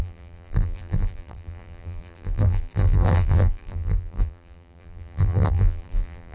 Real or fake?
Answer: fake